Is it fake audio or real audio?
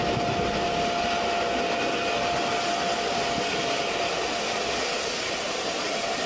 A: real